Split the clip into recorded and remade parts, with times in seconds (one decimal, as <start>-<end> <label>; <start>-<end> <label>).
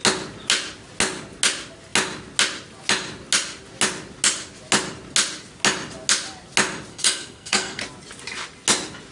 0.0-6.9 recorded; 6.9-7.8 remade; 7.8-9.1 recorded